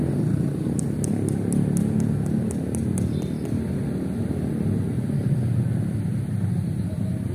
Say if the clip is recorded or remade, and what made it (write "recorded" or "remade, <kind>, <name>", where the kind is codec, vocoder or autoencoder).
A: recorded